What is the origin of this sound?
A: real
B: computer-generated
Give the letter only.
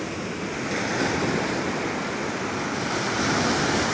A